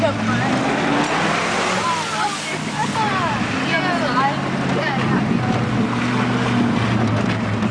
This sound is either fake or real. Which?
real